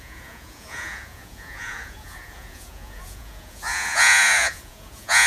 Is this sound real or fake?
fake